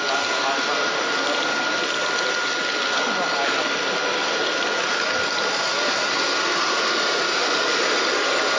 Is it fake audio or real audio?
real